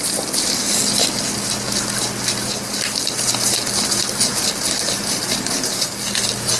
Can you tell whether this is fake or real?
real